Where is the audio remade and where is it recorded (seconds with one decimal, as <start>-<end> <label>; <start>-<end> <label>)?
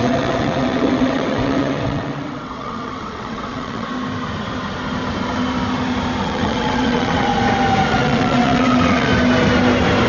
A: 0.0-3.9 remade; 3.9-6.2 recorded; 6.2-7.3 remade; 7.3-7.9 recorded; 7.9-9.1 remade; 9.1-10.1 recorded